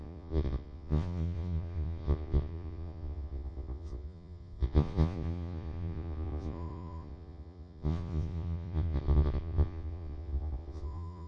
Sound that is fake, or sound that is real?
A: fake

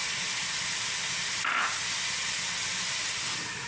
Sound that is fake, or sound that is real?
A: real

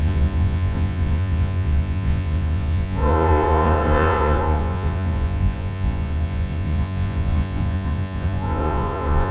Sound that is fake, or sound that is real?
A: fake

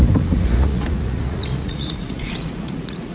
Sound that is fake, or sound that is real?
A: fake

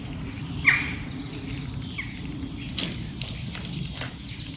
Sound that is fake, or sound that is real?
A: real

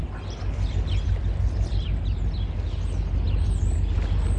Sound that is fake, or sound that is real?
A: real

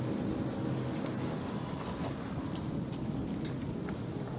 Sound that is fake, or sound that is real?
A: real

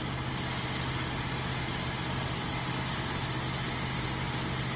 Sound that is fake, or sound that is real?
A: real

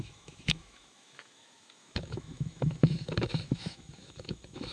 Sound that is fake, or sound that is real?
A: fake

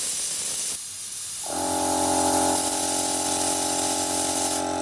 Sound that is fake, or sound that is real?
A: real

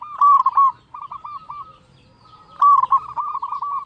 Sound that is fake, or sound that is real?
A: real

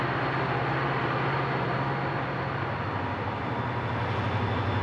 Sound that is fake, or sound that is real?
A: real